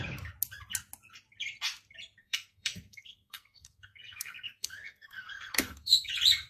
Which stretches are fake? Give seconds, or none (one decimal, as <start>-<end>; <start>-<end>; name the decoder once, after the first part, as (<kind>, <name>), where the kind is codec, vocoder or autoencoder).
2.2-6.1 (codec, SNAC)